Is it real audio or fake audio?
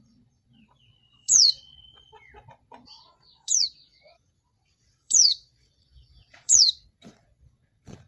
fake